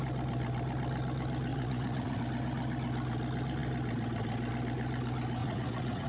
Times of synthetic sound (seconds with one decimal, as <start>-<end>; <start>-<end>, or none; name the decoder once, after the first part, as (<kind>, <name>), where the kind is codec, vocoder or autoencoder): 1.5-2.2 (vocoder, Vocos); 5.4-6.1